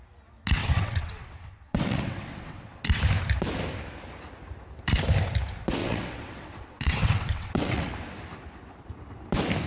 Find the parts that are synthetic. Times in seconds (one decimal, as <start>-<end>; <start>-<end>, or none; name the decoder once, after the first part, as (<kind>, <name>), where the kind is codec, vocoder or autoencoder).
0.6-3.0 (vocoder, WaveNeXt); 5.8-7.9